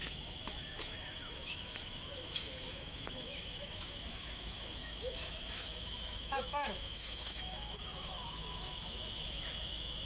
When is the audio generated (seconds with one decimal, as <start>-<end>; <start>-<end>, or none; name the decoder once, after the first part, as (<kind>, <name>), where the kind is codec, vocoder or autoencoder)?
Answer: 0.0-10.1 (autoencoder, DAC-VAE)